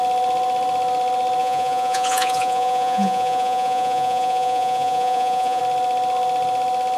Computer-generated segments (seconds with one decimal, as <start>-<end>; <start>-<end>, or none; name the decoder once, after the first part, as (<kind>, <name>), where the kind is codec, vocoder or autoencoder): 1.4-5.6 (vocoder, Vocos)